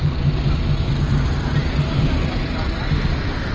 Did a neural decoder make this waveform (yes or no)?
no